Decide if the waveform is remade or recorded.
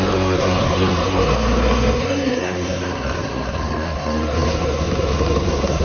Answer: remade